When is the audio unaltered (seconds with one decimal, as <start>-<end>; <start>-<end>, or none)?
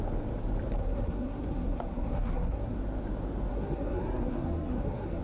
0.0-0.8; 2.8-3.5